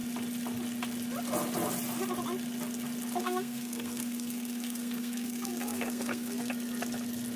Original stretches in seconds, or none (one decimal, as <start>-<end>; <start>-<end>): 0.0-3.2; 6.5-7.4